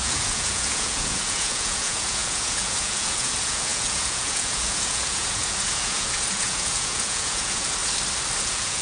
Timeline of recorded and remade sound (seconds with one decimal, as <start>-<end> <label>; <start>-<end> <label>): 0.0-7.8 remade; 7.8-8.4 recorded; 8.4-8.8 remade